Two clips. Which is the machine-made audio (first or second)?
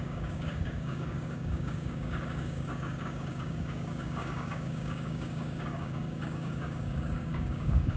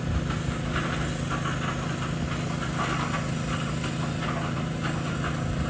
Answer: first